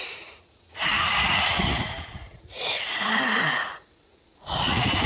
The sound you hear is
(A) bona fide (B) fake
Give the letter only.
B